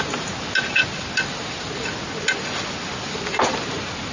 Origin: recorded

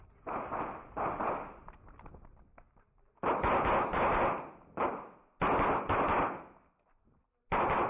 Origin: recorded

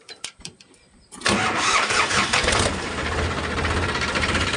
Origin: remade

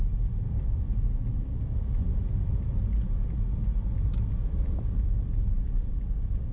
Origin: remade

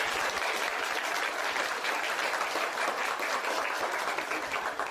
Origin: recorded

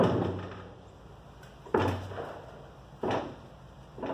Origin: recorded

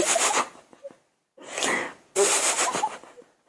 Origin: recorded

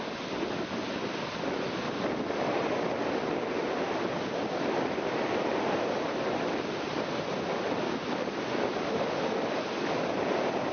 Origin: recorded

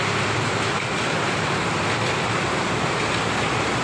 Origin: recorded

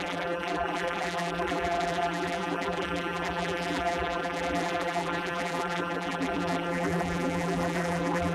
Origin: remade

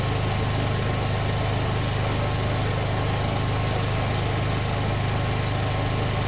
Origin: recorded